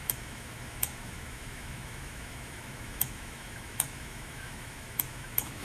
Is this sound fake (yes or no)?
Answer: yes